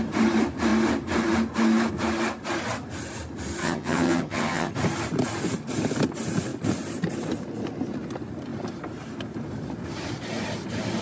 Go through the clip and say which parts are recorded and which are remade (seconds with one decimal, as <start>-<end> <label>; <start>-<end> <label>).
0.0-3.6 recorded; 3.6-4.7 remade; 4.7-11.0 recorded